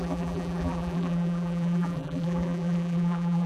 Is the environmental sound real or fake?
fake